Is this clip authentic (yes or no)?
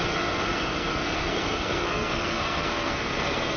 no